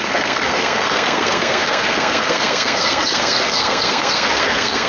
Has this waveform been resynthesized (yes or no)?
yes